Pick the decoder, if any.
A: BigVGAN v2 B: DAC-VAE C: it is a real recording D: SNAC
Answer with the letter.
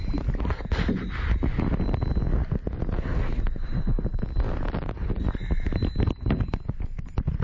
C